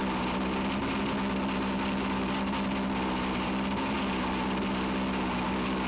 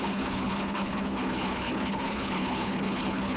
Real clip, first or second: first